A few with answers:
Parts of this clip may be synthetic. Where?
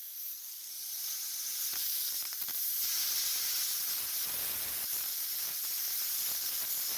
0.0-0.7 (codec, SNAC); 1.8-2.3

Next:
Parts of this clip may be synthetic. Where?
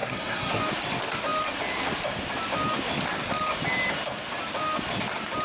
0.0-0.6 (codec, SNAC)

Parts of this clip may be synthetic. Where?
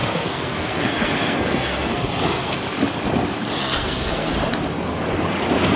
0.0-2.6 (codec, SNAC); 3.6-4.3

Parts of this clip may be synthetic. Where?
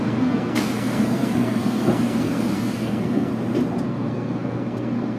0.0-3.3 (codec, SNAC); 3.8-5.2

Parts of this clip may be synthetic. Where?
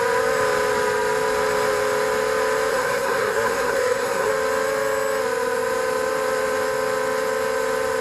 2.7-4.3 (codec, SNAC)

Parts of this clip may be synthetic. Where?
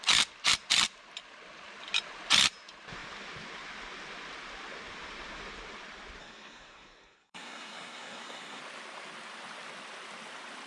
6.2-8.6 (codec, SNAC)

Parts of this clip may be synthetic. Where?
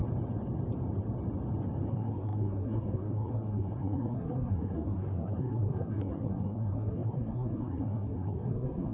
1.9-8.9 (codec, SNAC)